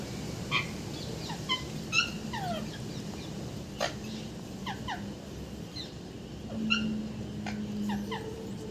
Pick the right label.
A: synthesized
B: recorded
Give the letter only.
A